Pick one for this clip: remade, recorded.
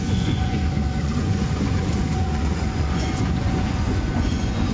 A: remade